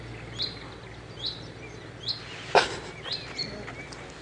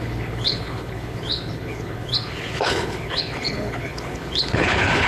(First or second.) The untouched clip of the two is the first